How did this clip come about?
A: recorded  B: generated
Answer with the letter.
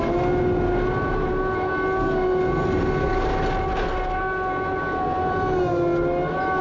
A